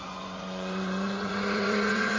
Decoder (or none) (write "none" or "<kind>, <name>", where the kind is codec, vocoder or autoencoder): vocoder, Vocos